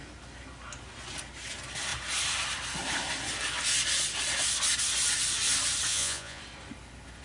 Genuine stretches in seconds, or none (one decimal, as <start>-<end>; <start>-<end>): 0.0-5.9; 6.4-7.2